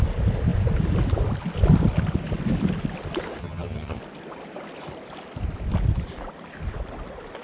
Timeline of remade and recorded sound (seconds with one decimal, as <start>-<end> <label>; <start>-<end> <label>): 0.0-3.4 recorded; 3.4-4.0 remade; 4.0-7.4 recorded